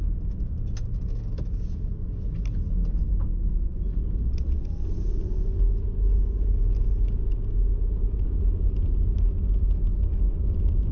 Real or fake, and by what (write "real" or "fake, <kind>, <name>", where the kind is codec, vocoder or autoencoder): real